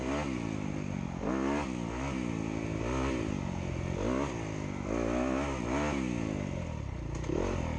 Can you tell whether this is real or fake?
real